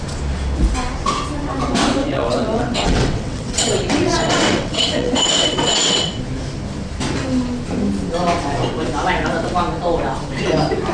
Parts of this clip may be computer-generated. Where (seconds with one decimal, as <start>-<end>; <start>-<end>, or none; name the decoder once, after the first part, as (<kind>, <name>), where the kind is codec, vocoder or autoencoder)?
2.0-6.2 (vocoder, WaveNeXt)